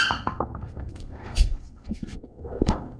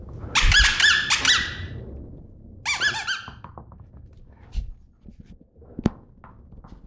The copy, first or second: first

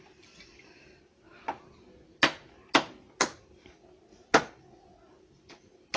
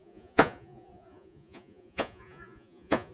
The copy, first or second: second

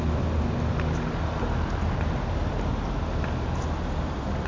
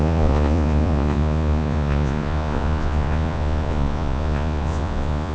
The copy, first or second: second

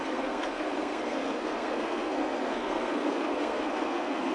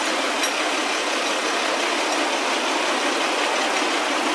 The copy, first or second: first